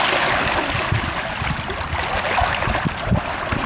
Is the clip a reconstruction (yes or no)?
no